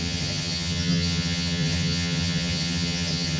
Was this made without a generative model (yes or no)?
no